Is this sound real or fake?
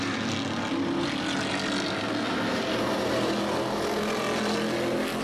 real